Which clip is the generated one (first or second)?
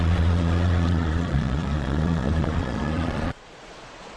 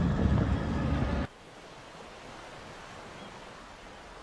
first